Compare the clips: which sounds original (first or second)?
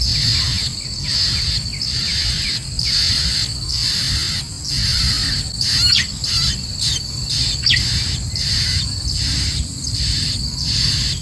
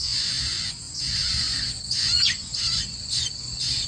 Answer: first